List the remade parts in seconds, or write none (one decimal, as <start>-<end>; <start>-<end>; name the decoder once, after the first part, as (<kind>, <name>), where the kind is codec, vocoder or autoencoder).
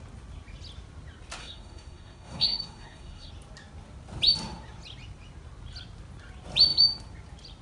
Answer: 1.4-3.3 (codec, SNAC)